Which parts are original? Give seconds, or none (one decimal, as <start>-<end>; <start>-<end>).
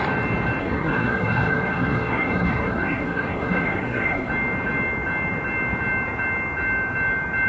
0.0-0.6; 4.3-7.5